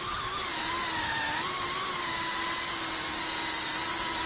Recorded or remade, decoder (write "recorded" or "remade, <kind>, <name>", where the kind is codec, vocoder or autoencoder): recorded